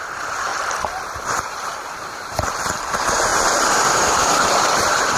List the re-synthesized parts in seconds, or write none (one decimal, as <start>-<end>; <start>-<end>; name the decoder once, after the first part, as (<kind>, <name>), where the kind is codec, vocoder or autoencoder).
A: 0.0-0.5 (vocoder, BigVGAN v2); 1.2-5.2